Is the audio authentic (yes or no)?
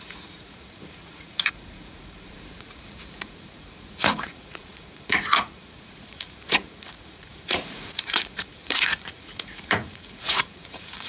no